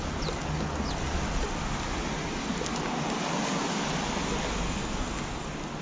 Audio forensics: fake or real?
real